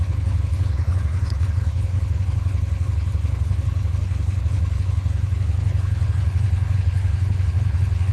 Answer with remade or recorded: remade